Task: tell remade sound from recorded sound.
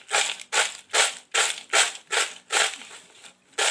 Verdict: recorded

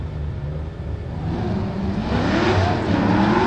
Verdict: recorded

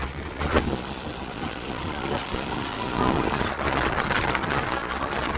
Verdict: remade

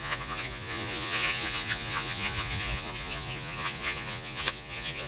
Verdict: remade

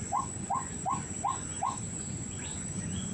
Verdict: remade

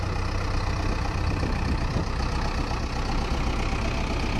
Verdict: recorded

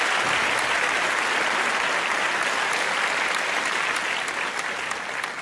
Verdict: recorded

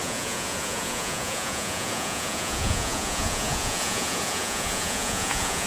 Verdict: remade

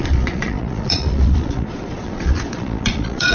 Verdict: remade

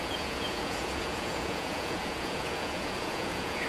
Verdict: remade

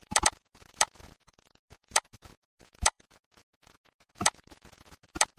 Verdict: remade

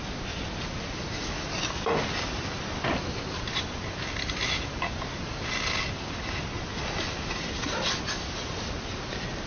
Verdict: recorded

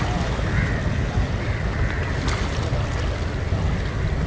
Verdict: recorded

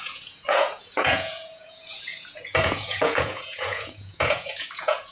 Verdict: remade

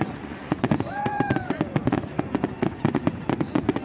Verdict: remade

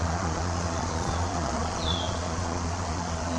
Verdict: remade